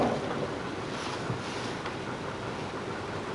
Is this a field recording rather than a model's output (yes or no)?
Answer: yes